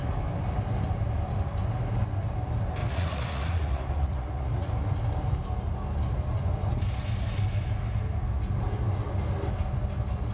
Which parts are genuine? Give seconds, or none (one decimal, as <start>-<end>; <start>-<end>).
0.0-2.8; 4.7-10.3